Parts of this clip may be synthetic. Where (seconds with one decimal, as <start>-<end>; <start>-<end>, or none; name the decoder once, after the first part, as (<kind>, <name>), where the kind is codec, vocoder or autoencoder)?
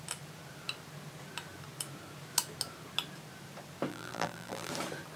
3.9-4.7 (vocoder, BigVGAN v2)